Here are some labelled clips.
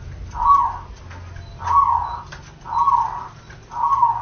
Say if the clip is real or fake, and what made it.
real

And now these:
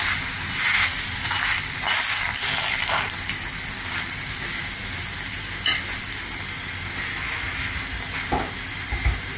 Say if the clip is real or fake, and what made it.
real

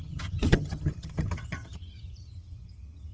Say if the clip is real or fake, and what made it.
fake, vocoder, HiFi-GAN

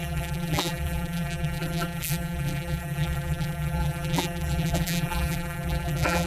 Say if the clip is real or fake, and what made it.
fake, vocoder, BigVGAN v2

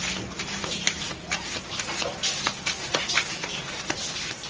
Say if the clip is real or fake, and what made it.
real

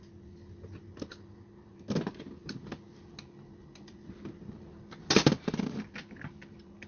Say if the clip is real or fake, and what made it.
real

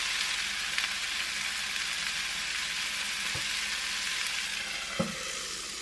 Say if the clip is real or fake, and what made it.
real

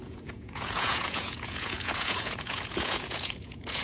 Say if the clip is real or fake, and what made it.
fake, vocoder, Vocos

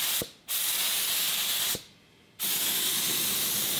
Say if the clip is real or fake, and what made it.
real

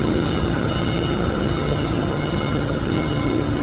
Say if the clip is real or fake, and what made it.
fake, vocoder, HiFi-GAN